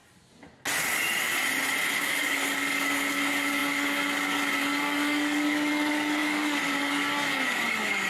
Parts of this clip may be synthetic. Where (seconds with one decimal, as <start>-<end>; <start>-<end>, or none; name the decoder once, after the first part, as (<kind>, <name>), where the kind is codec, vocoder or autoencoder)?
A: 2.0-8.1 (codec, DAC)